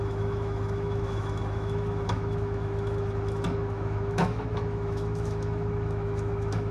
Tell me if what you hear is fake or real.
fake